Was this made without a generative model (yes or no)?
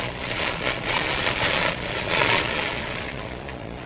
no